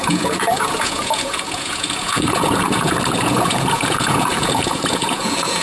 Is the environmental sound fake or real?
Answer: fake